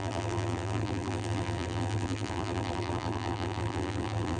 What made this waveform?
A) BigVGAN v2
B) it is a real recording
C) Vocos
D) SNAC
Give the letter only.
A